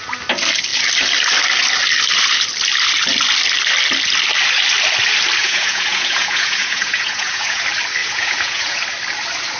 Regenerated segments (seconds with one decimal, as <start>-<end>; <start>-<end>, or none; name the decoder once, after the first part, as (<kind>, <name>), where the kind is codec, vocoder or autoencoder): 5.4-7.6 (vocoder, Vocos); 8.0-8.8